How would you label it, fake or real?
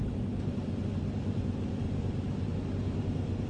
real